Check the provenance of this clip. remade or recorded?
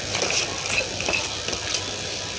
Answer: recorded